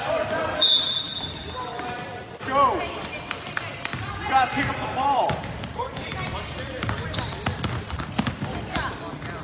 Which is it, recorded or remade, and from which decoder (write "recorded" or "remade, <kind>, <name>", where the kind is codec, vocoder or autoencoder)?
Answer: remade, vocoder, BigVGAN v2